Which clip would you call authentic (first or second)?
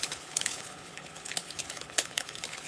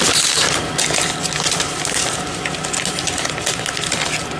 second